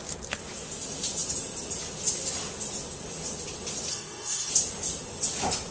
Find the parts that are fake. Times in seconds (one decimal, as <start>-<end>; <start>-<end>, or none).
3.9-4.5

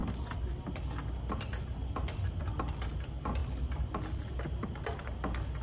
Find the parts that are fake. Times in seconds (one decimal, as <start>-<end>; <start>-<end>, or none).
none

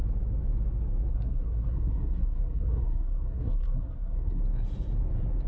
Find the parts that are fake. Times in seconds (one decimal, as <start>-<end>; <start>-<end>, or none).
1.1-4.4

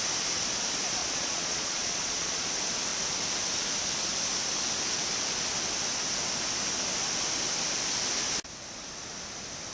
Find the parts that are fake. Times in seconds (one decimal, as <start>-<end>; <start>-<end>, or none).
1.0-2.5

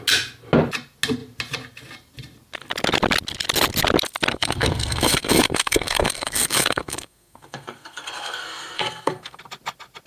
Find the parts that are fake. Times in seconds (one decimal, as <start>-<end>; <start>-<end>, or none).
4.3-9.4